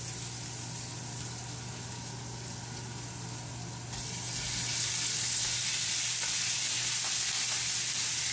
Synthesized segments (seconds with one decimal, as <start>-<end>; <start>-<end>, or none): none